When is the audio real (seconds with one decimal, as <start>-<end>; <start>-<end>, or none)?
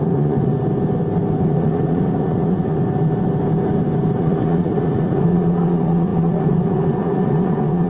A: 0.5-1.4; 2.8-4.2